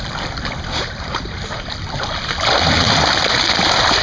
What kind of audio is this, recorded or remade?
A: remade